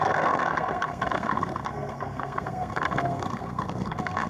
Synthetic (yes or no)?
yes